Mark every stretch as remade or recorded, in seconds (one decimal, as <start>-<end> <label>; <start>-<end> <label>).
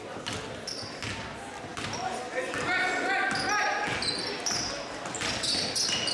0.0-6.1 recorded